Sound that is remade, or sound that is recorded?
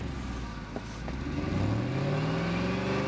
recorded